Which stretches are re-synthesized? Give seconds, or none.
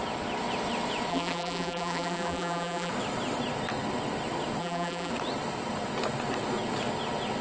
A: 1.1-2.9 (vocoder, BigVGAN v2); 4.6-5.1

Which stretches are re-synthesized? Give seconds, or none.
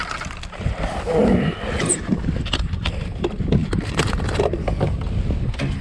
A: none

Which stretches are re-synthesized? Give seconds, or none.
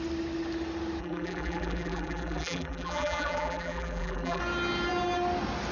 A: 1.0-4.4 (vocoder, BigVGAN v2)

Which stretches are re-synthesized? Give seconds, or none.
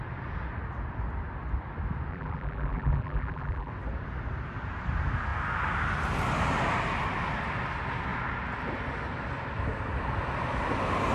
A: 2.1-3.7 (vocoder, BigVGAN v2)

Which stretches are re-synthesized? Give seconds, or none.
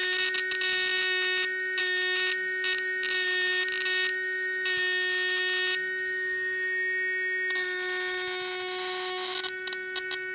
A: none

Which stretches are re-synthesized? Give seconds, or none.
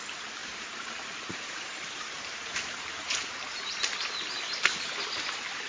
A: 0.4-3.8 (vocoder, BigVGAN v2)